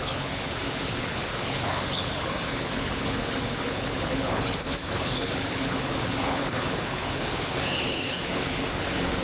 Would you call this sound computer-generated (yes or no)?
yes